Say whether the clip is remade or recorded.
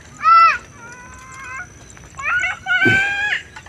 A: recorded